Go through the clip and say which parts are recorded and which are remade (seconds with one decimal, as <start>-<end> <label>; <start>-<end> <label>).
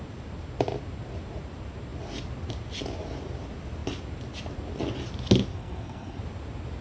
0.0-5.5 recorded; 5.5-6.2 remade; 6.2-6.8 recorded